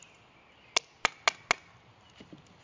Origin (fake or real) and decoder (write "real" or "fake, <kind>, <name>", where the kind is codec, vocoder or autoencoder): real